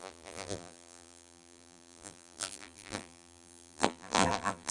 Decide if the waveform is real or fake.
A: fake